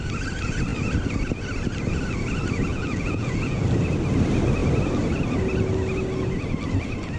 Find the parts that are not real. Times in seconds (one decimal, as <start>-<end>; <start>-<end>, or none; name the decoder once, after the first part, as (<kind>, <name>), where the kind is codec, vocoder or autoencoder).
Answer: 2.7-3.6 (vocoder, Vocos)